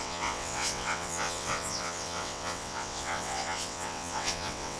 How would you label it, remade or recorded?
remade